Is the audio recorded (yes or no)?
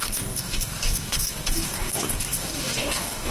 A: no